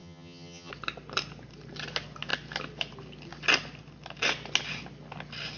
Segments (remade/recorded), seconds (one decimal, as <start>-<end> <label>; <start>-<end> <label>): 0.0-0.7 remade; 0.7-5.6 recorded